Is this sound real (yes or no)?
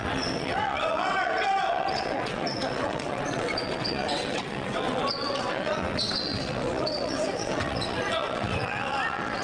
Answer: no